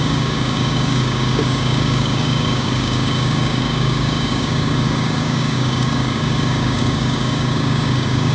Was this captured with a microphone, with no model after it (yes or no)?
no